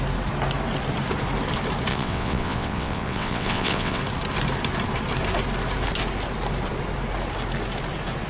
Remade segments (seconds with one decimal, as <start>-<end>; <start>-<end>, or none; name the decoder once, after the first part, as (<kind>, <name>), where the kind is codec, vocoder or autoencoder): 1.9-4.0 (vocoder, WaveNeXt)

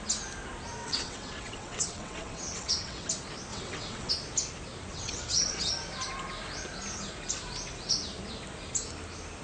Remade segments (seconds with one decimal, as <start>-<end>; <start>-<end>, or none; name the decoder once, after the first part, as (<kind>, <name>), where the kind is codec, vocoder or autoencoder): 0.8-3.1 (vocoder, WaveNeXt); 3.5-4.1; 4.9-5.7